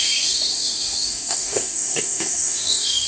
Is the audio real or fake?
fake